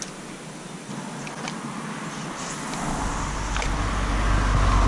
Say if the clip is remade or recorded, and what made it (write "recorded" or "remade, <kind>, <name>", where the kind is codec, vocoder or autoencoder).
recorded